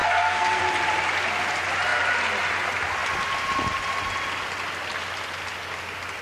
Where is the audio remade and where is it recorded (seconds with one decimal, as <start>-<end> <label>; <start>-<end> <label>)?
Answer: 0.0-0.6 remade; 0.6-6.2 recorded